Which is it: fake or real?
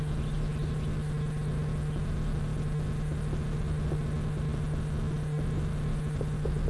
real